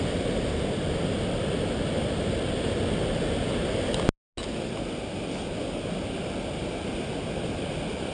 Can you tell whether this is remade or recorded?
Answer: recorded